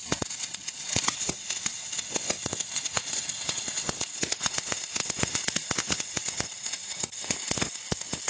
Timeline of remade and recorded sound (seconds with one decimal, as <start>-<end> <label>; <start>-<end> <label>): 0.0-8.3 remade